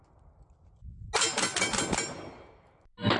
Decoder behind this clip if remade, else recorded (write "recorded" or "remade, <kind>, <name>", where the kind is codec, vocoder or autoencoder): recorded